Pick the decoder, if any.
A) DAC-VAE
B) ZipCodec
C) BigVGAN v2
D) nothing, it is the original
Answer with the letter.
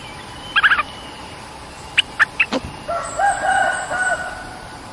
D